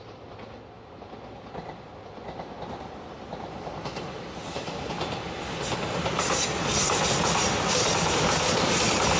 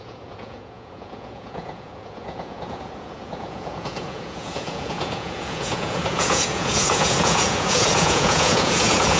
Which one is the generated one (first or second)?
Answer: second